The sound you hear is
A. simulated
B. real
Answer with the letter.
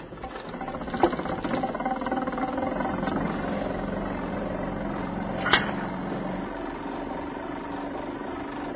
B